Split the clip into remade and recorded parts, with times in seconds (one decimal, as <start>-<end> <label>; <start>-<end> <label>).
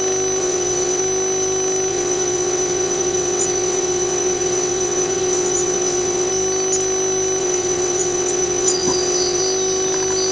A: 0.0-0.4 recorded; 0.4-1.0 remade; 1.0-1.9 recorded; 1.9-6.3 remade; 6.3-7.4 recorded; 7.4-9.4 remade; 9.4-10.3 recorded